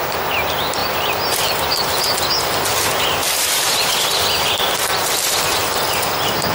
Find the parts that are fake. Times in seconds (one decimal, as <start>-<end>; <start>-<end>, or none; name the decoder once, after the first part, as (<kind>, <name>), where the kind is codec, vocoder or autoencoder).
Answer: 3.2-4.2 (vocoder, BigVGAN v2)